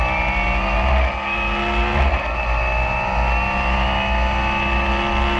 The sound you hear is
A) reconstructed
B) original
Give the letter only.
B